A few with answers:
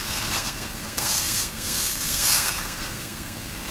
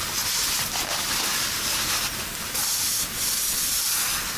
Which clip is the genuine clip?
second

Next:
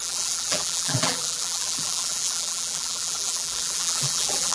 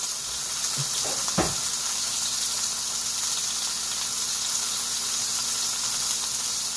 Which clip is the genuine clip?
second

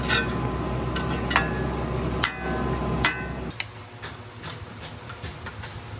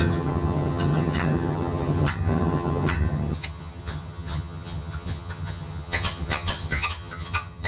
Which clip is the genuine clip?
first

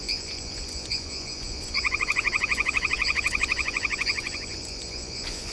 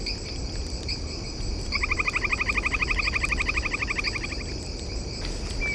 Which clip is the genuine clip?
second